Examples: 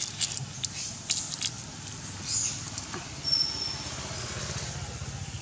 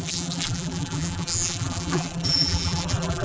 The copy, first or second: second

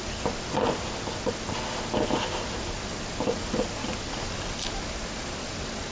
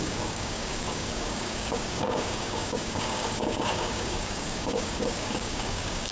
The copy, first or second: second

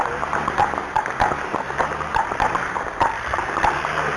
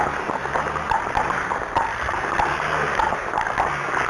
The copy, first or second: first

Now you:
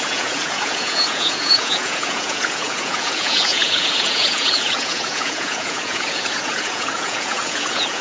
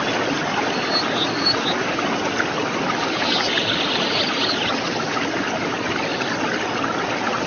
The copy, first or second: first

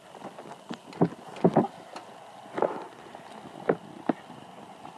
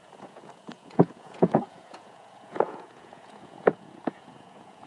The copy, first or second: second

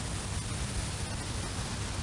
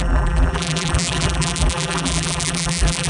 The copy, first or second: second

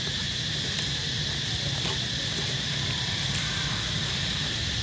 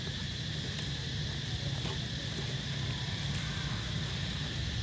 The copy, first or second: first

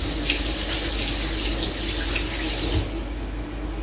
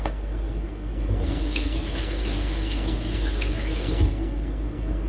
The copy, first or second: second